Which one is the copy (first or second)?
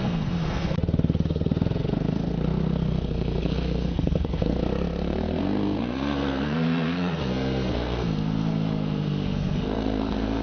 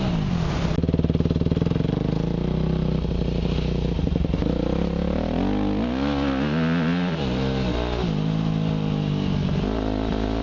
first